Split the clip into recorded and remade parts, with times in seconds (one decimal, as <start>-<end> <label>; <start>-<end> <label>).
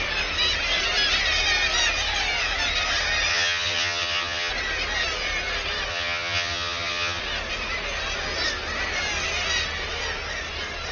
0.0-3.3 recorded; 3.3-4.5 remade; 4.5-5.9 recorded; 5.9-7.2 remade; 7.2-10.9 recorded